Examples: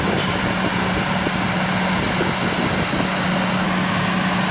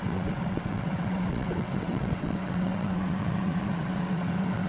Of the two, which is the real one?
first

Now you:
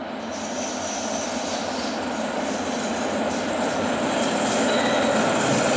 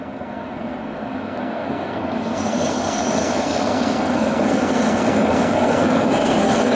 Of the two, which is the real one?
first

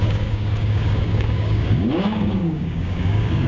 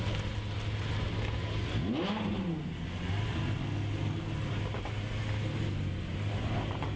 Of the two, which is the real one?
second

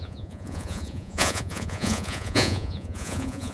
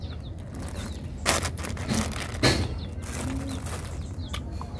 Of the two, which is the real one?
second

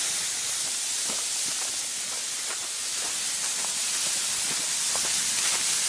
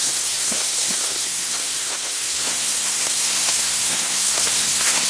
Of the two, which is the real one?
first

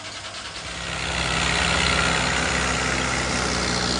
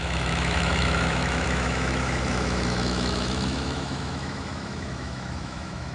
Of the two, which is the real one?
first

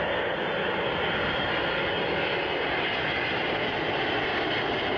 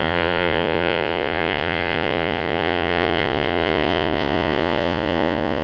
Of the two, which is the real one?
first